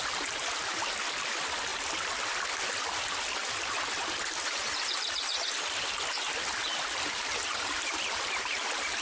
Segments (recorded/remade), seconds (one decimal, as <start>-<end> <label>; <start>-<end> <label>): 0.0-9.0 recorded